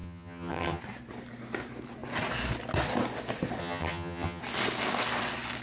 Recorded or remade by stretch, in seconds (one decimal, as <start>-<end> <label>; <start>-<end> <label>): 0.0-0.8 remade; 0.8-3.6 recorded; 3.6-4.4 remade; 4.4-5.6 recorded